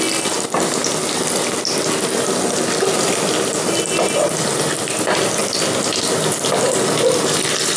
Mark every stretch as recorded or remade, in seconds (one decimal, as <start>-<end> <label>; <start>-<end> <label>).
0.0-7.8 recorded